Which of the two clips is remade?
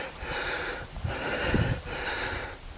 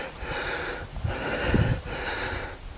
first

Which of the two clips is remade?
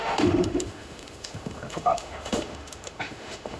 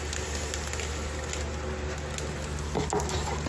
first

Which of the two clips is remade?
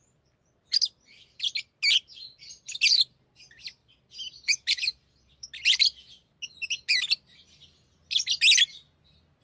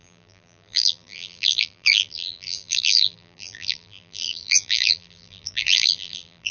second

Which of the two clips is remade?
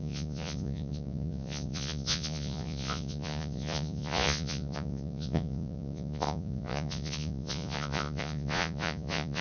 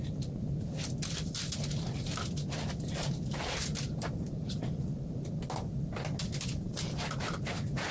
first